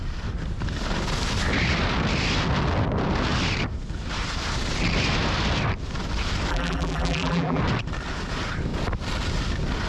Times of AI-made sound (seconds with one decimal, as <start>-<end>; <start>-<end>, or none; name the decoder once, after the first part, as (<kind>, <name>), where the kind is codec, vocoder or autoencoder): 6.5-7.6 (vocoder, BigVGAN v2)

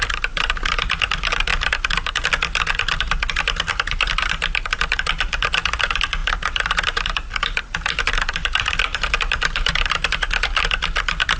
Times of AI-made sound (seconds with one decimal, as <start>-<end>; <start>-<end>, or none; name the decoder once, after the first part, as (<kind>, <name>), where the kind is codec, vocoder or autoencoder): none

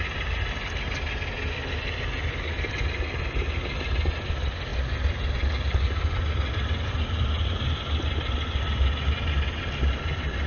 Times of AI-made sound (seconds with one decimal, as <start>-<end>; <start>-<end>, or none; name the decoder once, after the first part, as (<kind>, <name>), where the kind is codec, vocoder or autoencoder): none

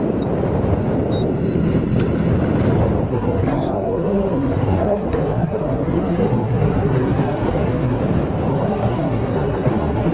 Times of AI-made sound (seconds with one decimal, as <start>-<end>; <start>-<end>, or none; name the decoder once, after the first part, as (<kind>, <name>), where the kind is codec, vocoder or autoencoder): 3.1-8.0 (codec, SNAC); 8.5-10.1

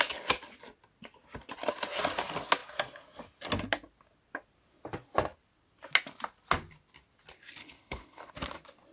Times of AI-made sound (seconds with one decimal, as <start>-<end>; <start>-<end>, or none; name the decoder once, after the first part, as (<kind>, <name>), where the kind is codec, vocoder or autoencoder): 7.6-8.3 (codec, HILCodec)

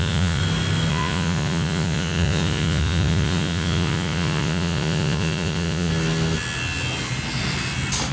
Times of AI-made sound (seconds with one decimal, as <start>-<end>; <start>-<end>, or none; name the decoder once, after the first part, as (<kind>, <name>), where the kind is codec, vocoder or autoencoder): 0.0-0.4 (vocoder, Vocos); 0.9-5.9